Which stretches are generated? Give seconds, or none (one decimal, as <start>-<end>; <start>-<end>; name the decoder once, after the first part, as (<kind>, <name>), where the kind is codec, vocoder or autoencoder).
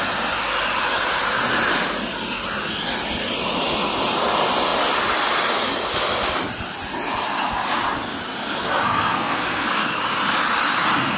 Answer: 8.4-10.0 (codec, SNAC)